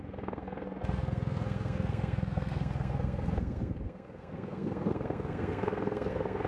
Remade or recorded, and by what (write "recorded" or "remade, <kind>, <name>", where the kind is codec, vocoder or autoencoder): remade, codec, SNAC